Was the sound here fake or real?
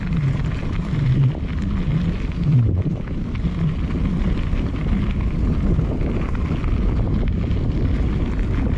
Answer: real